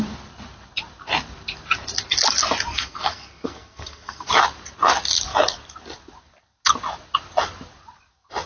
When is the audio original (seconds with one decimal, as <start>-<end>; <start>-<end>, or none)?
0.0-2.7; 4.3-8.5